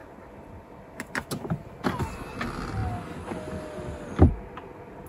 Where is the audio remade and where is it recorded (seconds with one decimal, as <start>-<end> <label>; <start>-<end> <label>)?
0.0-5.1 recorded